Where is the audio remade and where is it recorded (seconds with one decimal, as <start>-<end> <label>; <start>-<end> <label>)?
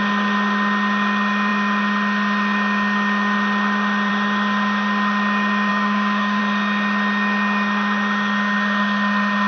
0.0-5.7 recorded; 5.7-6.4 remade; 6.4-9.5 recorded